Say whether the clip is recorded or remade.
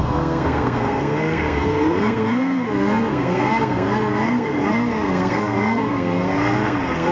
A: remade